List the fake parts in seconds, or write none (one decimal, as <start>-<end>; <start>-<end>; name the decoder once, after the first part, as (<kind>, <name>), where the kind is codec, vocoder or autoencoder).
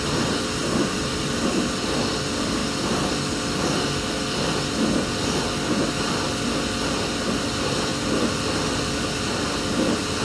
0.6-2.1 (vocoder, BigVGAN v2)